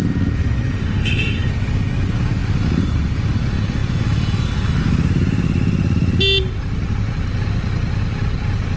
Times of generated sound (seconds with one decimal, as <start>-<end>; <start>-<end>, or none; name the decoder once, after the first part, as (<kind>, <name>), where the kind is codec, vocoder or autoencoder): 0.8-1.5 (autoencoder, DAC-VAE)